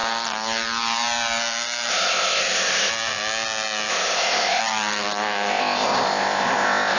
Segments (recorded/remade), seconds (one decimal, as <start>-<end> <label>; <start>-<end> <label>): 0.0-1.9 recorded; 1.9-2.9 remade; 2.9-3.9 recorded; 3.9-4.6 remade; 4.6-5.5 recorded; 5.5-7.0 remade

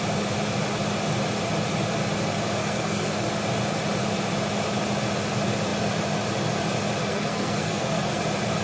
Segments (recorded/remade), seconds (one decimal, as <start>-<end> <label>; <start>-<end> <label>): 0.0-2.6 recorded; 2.6-3.3 remade; 3.3-7.0 recorded; 7.0-8.2 remade; 8.2-8.6 recorded